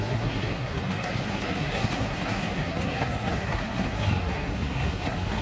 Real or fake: fake